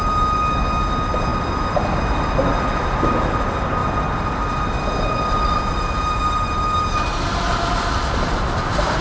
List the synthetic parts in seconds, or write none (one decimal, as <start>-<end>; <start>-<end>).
none